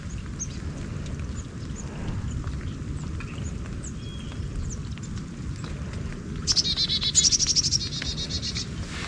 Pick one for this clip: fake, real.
real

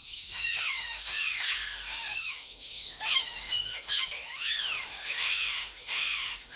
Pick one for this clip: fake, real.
fake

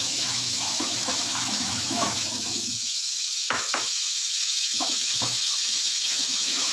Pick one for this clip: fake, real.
fake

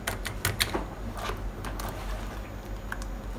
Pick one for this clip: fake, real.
real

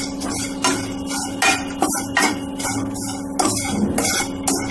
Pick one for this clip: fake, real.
real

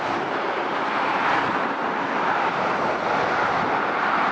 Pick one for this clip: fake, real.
real